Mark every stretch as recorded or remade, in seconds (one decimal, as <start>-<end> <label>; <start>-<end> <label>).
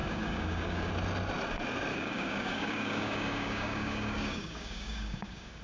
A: 0.0-0.9 remade; 0.9-1.9 recorded; 1.9-5.6 remade